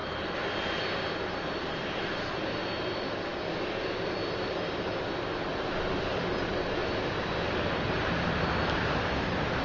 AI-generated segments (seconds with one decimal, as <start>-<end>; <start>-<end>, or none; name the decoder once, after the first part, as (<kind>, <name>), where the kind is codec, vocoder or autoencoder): none